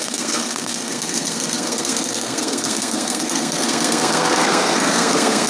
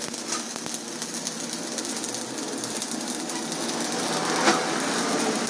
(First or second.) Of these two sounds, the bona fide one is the second